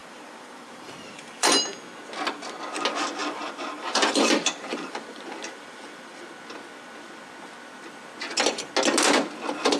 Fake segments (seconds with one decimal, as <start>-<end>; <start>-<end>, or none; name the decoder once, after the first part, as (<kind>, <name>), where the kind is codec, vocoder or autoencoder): 0.0-1.6 (vocoder, BigVGAN v2); 3.2-6.3